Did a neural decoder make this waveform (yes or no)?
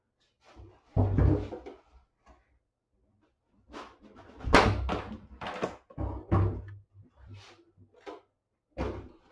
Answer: no